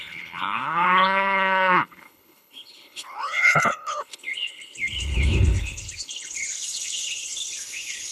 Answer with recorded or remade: remade